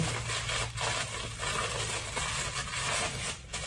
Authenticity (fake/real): real